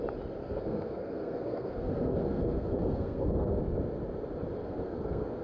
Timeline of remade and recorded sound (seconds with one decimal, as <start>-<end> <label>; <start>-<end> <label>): 0.0-0.4 recorded; 0.4-3.6 remade; 3.6-4.6 recorded; 4.6-5.4 remade